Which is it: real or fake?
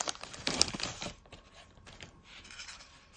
fake